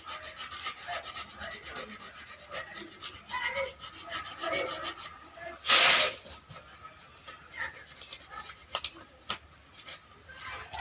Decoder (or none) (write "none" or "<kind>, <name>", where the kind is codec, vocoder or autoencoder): none